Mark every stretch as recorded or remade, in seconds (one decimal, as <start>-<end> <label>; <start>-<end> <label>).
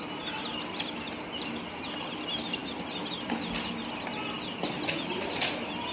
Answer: 0.0-5.9 recorded